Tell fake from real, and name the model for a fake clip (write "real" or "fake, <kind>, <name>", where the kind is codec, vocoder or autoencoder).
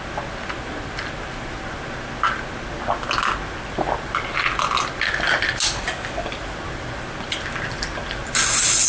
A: real